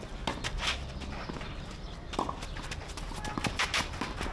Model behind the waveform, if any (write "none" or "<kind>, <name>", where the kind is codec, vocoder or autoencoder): none